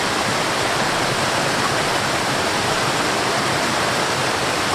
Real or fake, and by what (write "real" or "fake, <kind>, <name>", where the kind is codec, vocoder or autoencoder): real